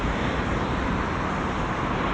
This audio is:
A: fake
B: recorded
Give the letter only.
A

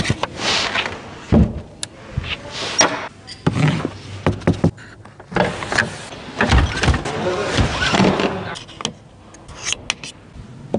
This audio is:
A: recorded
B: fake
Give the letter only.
A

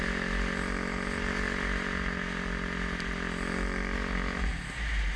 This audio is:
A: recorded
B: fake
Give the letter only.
A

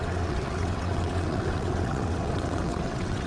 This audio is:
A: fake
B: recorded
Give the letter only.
A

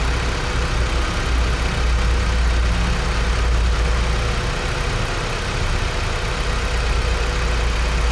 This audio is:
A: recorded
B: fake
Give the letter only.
A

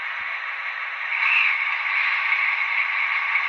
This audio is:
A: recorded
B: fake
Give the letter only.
A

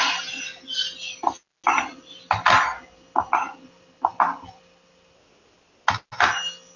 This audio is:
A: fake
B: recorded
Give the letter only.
B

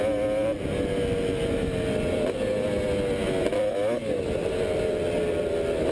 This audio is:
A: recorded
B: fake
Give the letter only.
A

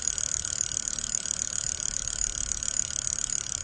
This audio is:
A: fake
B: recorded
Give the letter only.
B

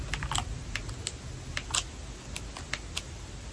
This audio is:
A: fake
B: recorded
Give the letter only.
B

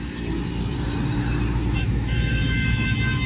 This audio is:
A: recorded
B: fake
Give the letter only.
A